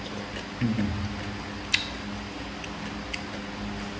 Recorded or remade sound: recorded